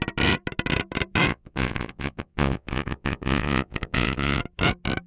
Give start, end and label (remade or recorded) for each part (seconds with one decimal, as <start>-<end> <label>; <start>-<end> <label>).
0.0-1.3 recorded; 1.3-4.4 remade; 4.4-5.1 recorded